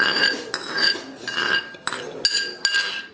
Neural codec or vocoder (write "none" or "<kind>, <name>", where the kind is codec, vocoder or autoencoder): none